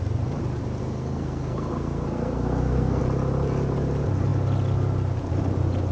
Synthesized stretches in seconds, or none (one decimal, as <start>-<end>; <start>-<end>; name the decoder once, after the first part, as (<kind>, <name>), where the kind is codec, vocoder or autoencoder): 0.8-3.0 (codec, SNAC)